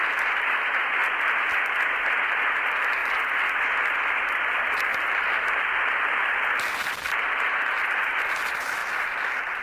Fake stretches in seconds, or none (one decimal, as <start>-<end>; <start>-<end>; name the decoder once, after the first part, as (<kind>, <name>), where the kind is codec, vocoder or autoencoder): 4.9-8.2 (vocoder, BigVGAN v2); 8.8-9.6